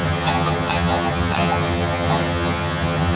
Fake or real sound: fake